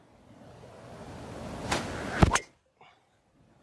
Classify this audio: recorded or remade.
recorded